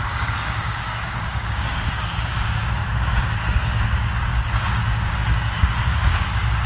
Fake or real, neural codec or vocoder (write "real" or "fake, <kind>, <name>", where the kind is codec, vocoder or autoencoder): fake, codec, DAC